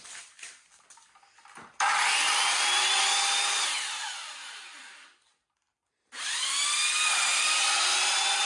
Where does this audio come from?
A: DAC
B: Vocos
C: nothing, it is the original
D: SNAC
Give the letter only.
C